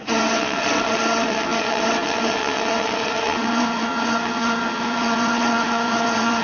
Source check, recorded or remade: remade